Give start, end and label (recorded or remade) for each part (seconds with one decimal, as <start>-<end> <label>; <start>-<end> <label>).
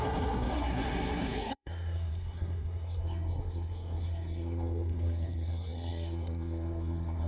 0.0-7.3 remade